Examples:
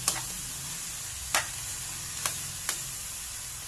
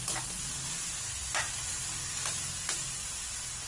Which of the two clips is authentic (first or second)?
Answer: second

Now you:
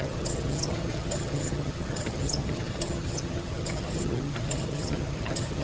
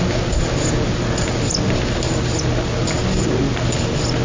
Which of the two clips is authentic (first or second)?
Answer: second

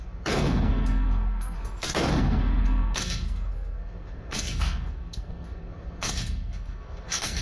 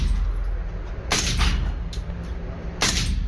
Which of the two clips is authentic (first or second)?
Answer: second